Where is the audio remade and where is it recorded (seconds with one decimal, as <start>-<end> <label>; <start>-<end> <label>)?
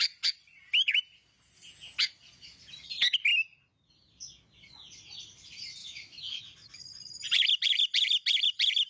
0.0-5.8 recorded; 5.8-6.4 remade; 6.4-8.9 recorded